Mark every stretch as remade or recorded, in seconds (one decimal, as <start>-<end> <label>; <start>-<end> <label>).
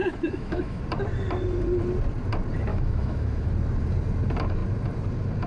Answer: 0.0-0.8 remade; 0.8-2.7 recorded; 2.7-3.5 remade; 3.5-5.5 recorded